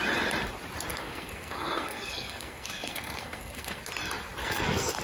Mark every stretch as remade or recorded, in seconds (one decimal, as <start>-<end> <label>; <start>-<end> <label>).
0.0-0.9 recorded; 0.9-3.9 remade; 3.9-4.4 recorded; 4.4-5.0 remade